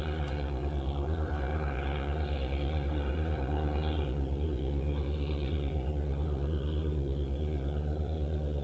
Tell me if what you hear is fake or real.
fake